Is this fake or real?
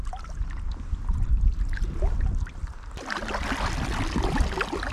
real